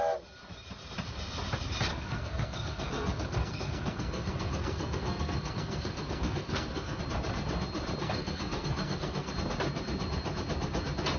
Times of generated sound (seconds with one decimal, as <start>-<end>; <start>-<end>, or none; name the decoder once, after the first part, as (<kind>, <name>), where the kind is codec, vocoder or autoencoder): 1.9-7.0 (codec, SNAC); 8.0-9.3